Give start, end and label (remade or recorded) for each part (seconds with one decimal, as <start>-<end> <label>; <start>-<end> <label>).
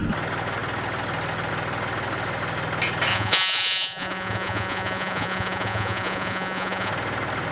0.0-3.1 recorded; 3.1-6.9 remade; 6.9-7.5 recorded